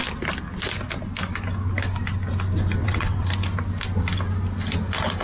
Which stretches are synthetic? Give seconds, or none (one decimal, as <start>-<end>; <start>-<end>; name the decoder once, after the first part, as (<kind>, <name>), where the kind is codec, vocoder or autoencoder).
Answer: 2.8-3.3 (vocoder, WaveNeXt)